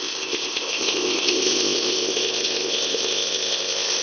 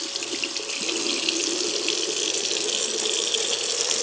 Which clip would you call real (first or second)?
second